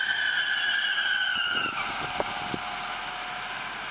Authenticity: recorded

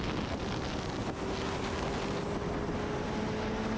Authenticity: recorded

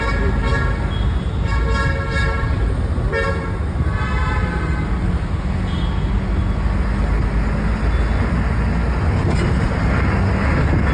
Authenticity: recorded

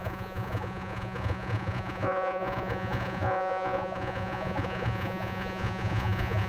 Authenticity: remade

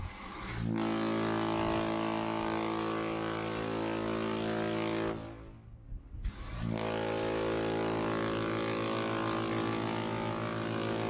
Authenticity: recorded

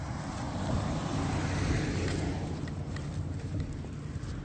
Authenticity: recorded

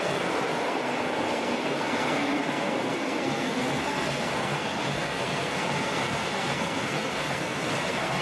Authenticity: remade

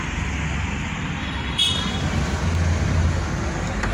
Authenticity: recorded